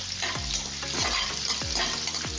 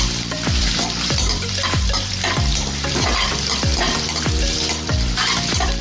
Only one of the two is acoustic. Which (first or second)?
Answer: first